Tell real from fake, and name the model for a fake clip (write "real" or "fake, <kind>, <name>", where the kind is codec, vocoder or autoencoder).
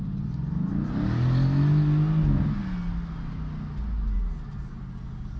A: real